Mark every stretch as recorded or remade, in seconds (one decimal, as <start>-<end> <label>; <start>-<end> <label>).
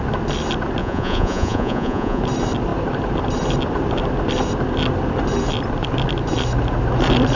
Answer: 0.0-0.8 recorded; 0.8-2.2 remade; 2.2-7.4 recorded